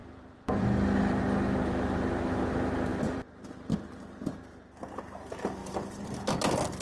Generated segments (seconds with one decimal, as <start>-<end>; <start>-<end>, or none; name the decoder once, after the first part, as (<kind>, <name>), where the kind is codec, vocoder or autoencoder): 0.0-1.2 (vocoder, BigVGAN v2); 2.9-4.9